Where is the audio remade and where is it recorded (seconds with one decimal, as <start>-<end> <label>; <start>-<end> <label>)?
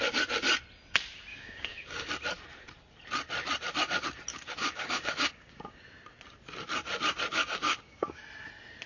0.0-1.3 recorded; 1.3-2.1 remade; 2.1-4.3 recorded; 4.3-5.8 remade; 5.8-7.3 recorded; 7.3-8.2 remade; 8.2-8.9 recorded